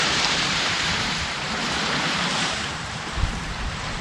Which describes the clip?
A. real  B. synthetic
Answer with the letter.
B